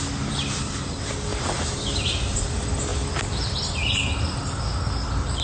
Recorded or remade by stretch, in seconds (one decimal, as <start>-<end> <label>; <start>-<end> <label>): 0.0-5.4 recorded